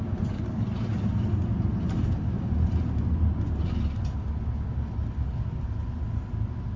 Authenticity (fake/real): real